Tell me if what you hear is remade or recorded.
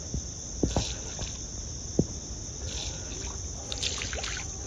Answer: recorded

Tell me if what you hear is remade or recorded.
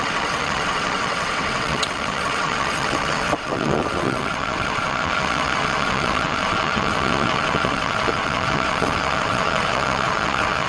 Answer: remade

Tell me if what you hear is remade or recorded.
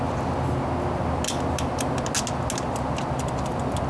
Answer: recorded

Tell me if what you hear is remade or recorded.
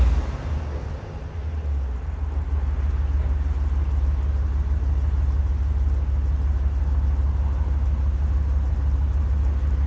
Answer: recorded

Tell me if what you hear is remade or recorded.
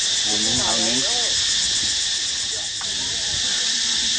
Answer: recorded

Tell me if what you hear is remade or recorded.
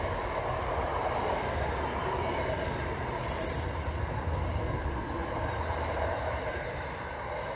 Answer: recorded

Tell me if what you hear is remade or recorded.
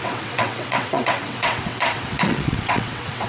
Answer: remade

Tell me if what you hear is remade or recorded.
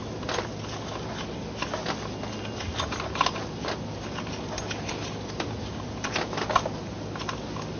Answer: recorded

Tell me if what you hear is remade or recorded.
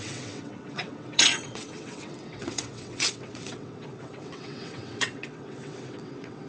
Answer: remade